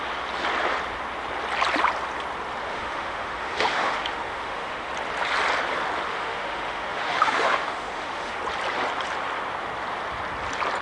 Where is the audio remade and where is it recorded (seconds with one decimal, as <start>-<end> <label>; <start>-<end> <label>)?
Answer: 0.0-2.7 recorded; 2.7-4.9 remade; 4.9-6.1 recorded; 6.1-8.4 remade; 8.4-10.8 recorded